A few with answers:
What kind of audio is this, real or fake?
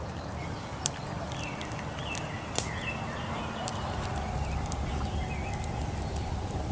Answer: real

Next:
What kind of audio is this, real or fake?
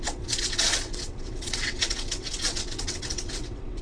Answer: fake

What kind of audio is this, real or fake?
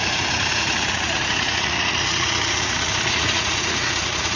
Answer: fake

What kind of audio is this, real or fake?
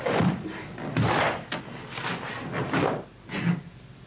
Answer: real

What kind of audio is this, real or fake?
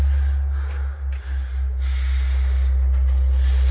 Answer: real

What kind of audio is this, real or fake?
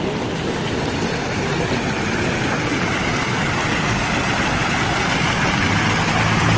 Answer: real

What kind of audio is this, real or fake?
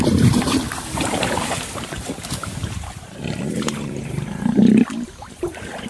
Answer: fake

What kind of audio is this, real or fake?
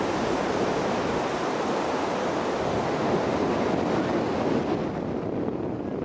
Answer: real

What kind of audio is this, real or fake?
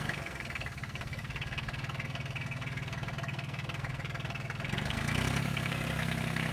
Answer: fake